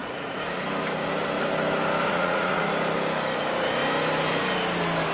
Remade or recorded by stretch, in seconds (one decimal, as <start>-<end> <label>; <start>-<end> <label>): 0.0-0.6 remade; 0.6-2.1 recorded; 2.1-2.6 remade; 2.6-5.1 recorded